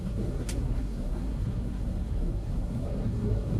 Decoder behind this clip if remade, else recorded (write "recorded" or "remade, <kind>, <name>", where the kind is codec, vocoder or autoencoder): remade, codec, SNAC